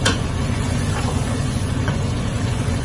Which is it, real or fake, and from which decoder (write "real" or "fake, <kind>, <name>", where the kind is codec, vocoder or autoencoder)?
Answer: fake, vocoder, Vocos